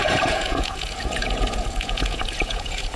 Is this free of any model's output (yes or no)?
no